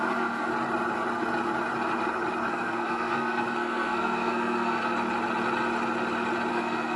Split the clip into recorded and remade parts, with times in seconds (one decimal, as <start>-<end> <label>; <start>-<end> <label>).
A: 0.0-0.5 remade; 0.5-2.5 recorded; 2.5-4.8 remade; 4.8-6.5 recorded; 6.5-7.0 remade